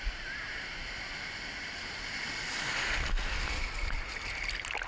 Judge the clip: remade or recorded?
recorded